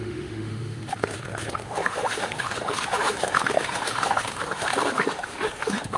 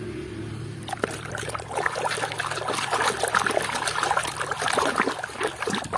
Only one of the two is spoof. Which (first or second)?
first